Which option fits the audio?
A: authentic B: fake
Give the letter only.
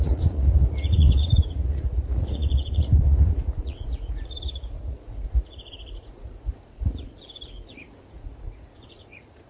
B